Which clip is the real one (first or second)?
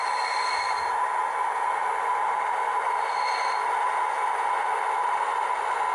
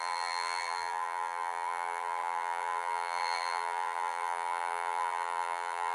first